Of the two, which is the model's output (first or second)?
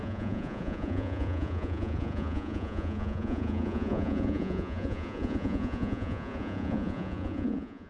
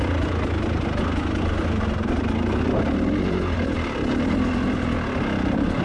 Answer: first